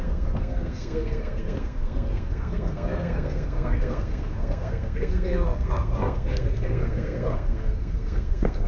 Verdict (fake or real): fake